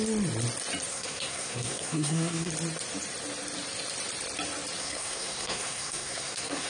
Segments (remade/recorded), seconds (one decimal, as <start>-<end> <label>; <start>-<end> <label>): 0.0-0.9 recorded; 0.9-2.5 remade; 2.5-4.8 recorded; 4.8-6.7 remade